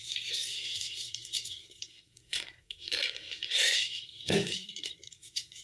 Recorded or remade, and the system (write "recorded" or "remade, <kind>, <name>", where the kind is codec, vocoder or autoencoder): remade, codec, SNAC